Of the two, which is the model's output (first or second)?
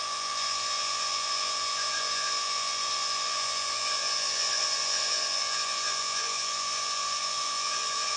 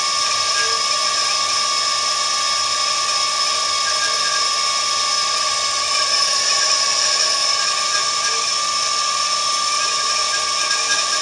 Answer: first